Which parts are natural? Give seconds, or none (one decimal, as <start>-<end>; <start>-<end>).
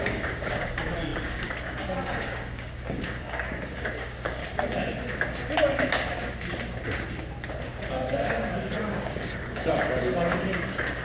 4.4-7.9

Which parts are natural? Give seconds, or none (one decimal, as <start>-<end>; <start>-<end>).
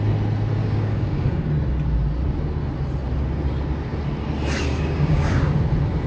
0.0-0.6; 1.5-4.7; 5.6-6.1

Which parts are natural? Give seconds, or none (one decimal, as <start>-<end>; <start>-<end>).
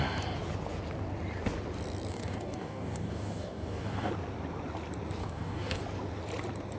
0.0-2.1; 4.1-5.2; 5.8-6.8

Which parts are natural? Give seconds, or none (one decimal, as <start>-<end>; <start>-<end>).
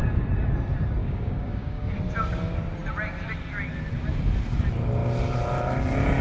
0.0-1.0; 1.9-6.2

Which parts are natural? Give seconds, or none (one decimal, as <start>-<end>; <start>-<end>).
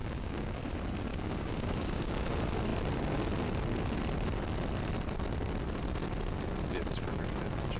0.6-1.1; 2.3-7.8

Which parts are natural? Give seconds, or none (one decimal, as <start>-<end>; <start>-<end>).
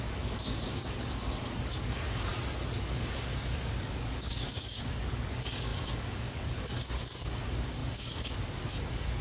2.3-2.8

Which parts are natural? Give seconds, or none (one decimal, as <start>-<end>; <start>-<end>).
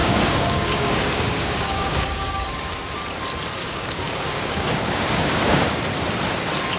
2.9-3.6; 5.8-6.8